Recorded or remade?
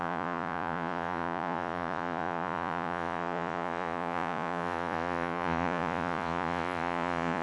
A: remade